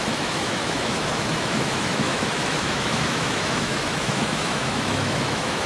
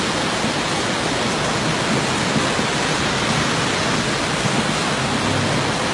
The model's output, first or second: first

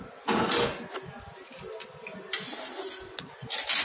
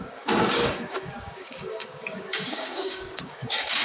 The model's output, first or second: second